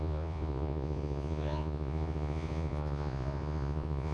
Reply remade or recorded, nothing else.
remade